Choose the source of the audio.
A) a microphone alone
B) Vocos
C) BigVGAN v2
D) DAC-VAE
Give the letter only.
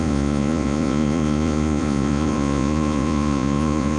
B